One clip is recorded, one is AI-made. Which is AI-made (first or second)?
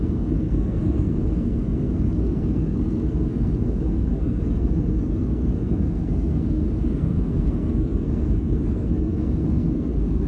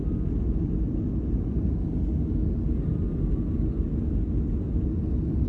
first